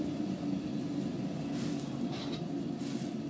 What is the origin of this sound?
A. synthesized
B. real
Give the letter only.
B